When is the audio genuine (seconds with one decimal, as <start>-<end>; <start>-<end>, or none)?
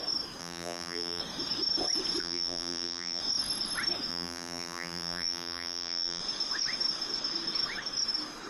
0.0-0.4; 1.2-2.2; 3.2-4.1; 6.2-8.5